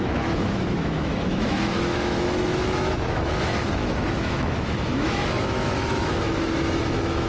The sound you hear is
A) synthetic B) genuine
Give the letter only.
A